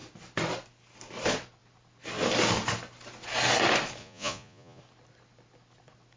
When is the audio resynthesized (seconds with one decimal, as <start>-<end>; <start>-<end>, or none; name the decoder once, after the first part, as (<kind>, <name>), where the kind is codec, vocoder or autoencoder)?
4.0-4.8 (vocoder, Vocos)